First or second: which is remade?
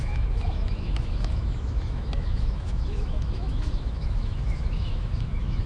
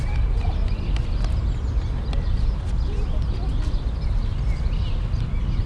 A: first